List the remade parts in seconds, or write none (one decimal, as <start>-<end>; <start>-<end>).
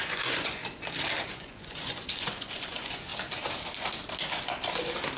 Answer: 0.0-0.6; 1.2-3.1